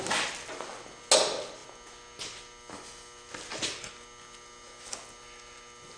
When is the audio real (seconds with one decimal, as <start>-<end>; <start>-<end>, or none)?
0.0-6.0

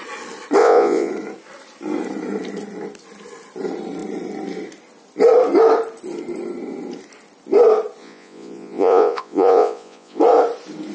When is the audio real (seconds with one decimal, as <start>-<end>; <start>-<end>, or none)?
0.0-0.6; 1.1-8.0; 10.2-10.9

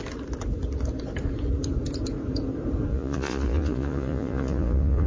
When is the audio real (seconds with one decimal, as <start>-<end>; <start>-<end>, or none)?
0.0-2.9

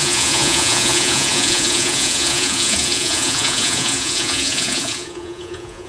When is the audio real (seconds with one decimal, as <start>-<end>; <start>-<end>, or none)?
none

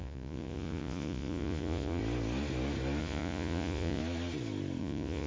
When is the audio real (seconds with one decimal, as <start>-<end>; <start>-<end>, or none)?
2.0-3.0; 4.0-4.8

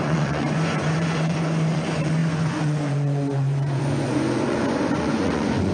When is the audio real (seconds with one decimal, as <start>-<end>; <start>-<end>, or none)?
none

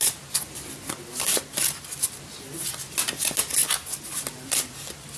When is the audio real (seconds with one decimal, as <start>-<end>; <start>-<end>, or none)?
0.0-5.2

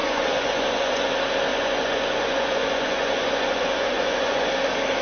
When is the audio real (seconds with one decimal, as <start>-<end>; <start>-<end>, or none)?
1.1-1.5; 4.5-5.0